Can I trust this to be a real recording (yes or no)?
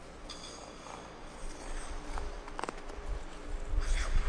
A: yes